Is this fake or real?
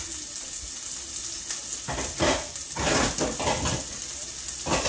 real